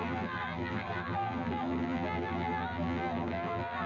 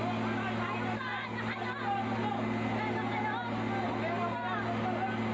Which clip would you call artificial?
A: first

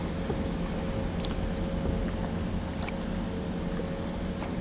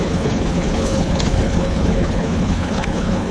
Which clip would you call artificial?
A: second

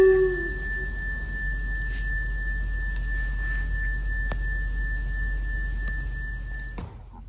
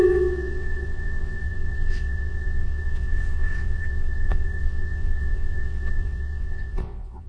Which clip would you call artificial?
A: second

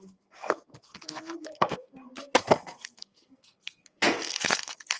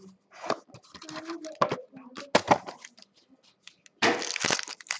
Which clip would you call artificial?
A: first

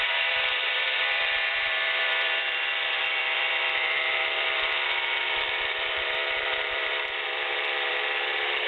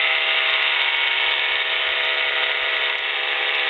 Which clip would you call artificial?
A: first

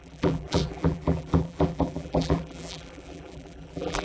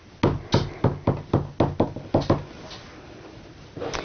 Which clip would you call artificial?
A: first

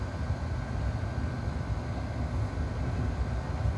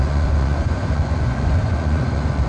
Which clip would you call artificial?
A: second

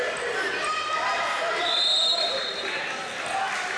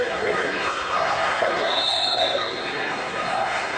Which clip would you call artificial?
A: second